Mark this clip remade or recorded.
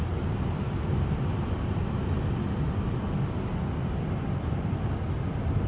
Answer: recorded